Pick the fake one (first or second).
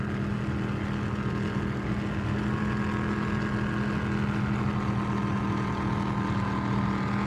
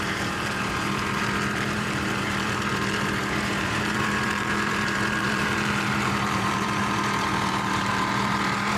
second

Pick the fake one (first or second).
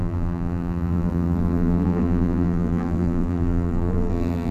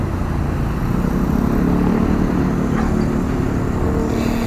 first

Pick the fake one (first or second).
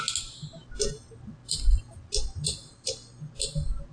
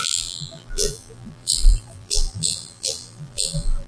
second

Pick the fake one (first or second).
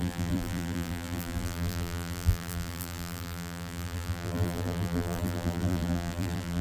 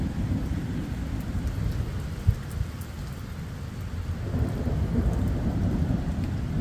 first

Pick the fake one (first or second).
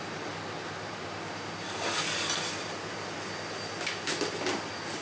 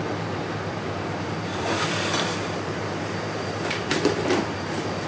second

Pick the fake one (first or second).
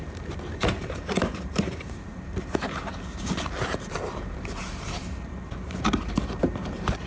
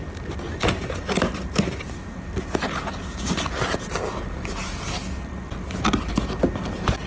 first